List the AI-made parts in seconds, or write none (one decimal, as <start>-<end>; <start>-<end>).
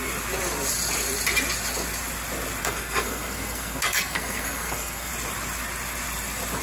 2.6-5.1